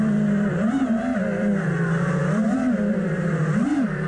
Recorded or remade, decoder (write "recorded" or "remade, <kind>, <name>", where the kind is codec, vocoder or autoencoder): remade, vocoder, BigVGAN v2